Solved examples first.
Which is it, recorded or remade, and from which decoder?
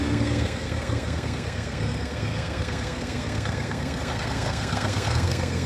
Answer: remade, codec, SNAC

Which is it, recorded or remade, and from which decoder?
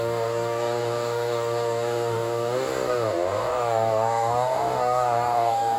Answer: remade, codec, DAC